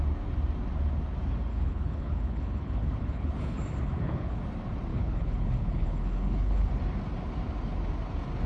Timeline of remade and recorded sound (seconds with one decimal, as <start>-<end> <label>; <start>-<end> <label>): 0.0-1.5 recorded; 1.5-4.4 remade; 4.4-4.9 recorded; 4.9-6.7 remade; 6.7-8.5 recorded